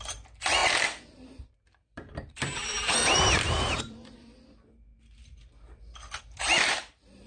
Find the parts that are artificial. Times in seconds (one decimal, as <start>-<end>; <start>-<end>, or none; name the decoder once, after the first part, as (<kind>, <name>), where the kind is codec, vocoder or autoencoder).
0.0-4.9 (vocoder, BigVGAN v2); 6.2-7.3